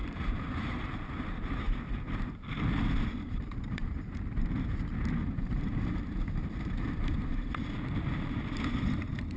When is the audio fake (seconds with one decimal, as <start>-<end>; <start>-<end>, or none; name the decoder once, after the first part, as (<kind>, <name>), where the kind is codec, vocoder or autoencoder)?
0.0-0.9 (vocoder, BigVGAN v2); 3.1-4.2; 5.2-8.5